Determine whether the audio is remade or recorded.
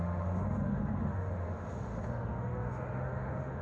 remade